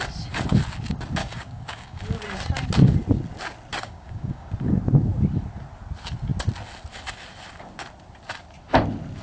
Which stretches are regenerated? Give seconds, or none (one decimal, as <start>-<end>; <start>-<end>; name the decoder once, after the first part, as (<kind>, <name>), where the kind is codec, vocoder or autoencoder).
1.2-2.0 (codec, DAC); 3.7-4.5

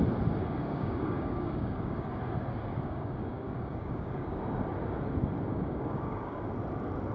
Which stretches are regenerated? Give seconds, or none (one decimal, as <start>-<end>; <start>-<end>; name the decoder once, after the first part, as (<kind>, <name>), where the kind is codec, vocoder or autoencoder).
0.4-2.1 (codec, DAC); 2.7-4.4; 5.5-6.5